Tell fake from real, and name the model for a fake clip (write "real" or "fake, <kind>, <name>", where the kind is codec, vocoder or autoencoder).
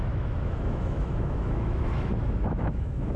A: fake, autoencoder, DAC-VAE